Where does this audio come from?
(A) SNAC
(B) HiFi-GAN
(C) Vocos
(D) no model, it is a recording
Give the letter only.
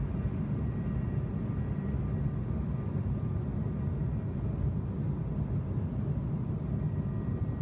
D